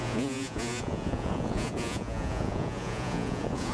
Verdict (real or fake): fake